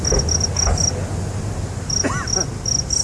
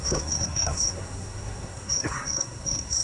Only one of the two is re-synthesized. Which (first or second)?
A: second